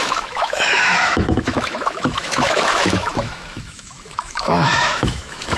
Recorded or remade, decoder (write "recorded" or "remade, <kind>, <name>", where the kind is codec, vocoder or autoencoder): remade, autoencoder, DAC-VAE